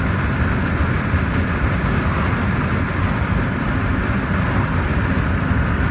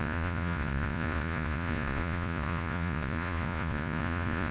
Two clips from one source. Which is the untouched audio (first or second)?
first